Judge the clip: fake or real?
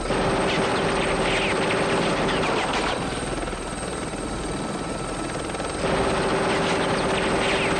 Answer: real